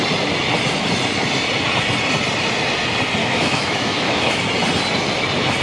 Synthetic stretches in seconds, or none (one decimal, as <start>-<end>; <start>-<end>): 3.2-4.4